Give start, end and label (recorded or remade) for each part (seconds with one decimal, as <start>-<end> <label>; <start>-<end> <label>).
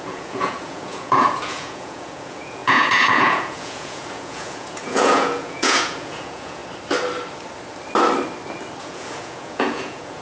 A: 0.0-6.6 remade; 6.6-8.8 recorded; 8.8-10.2 remade